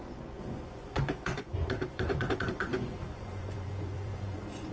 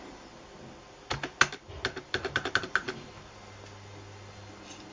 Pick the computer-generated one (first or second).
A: first